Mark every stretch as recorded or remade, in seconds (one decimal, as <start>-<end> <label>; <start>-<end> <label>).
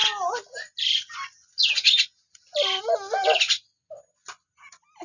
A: 0.0-5.0 recorded